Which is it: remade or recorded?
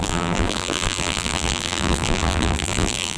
remade